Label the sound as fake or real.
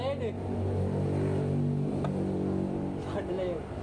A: real